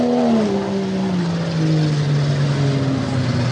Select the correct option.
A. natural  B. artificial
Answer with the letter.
A